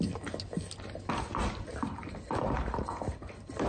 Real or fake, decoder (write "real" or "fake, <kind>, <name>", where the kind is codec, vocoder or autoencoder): real